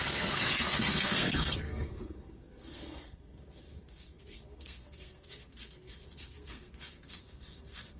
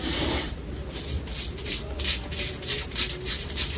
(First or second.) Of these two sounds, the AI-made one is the first